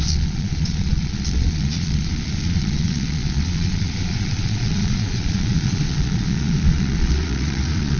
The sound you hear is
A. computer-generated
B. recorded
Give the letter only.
A